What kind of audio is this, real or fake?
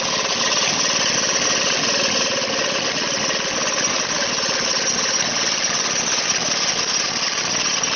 real